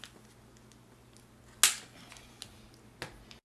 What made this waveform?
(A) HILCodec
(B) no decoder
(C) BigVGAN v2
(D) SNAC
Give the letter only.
B